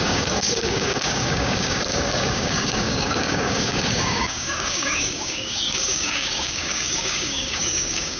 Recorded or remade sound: remade